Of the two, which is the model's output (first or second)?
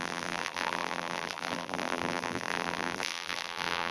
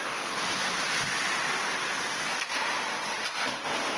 first